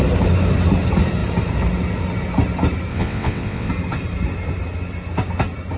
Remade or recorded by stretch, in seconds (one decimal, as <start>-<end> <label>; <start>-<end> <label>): 0.0-2.9 recorded; 2.9-3.7 remade; 3.7-5.8 recorded